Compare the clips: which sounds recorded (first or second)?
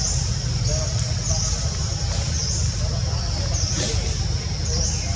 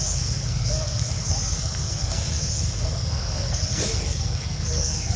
first